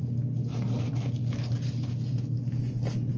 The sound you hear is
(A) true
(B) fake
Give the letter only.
A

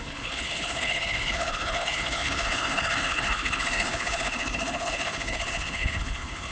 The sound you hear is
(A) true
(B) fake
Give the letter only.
B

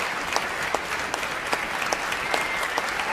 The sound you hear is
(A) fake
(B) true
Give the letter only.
B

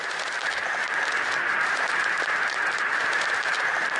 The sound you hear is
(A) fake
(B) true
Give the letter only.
A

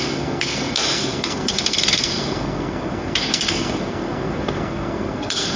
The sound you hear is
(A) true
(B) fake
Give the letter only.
B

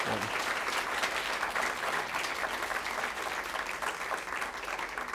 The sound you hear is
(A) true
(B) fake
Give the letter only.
A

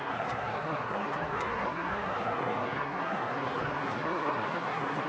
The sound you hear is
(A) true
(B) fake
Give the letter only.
B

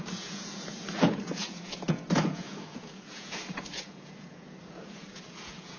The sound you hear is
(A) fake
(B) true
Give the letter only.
A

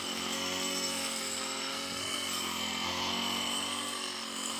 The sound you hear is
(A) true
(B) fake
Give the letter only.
B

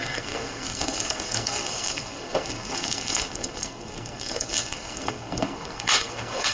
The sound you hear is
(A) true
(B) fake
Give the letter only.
B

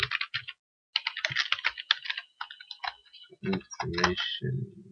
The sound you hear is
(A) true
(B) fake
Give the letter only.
A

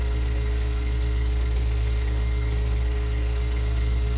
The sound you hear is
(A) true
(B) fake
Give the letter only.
B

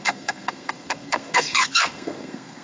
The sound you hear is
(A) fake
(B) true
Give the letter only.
A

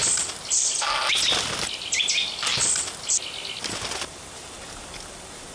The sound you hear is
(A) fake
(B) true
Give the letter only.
B